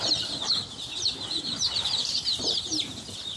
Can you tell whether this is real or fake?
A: fake